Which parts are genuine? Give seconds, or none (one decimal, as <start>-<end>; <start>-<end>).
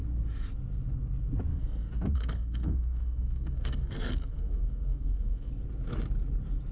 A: 0.0-1.5; 5.5-6.7